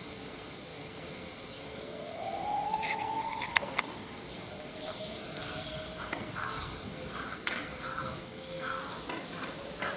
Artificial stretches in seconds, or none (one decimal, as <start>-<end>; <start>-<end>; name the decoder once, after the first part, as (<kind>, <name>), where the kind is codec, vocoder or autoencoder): 0.0-8.8 (codec, SNAC)